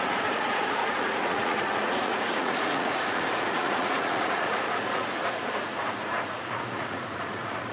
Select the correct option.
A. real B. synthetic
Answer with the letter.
B